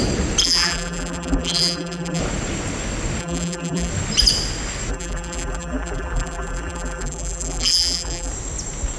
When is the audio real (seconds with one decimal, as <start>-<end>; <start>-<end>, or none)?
0.0-0.4; 2.2-3.2; 3.9-4.9; 8.3-9.0